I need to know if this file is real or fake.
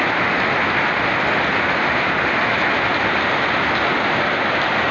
real